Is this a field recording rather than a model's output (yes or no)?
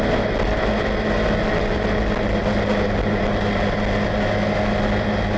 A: yes